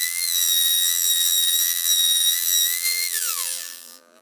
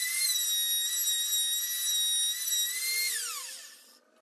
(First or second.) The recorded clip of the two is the second